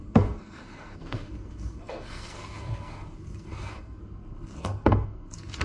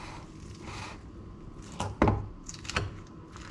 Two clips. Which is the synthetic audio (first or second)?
first